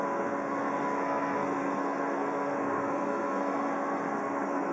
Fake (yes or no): yes